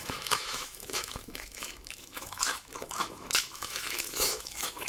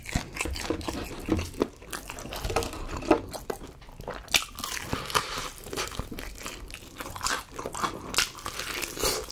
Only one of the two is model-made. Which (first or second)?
first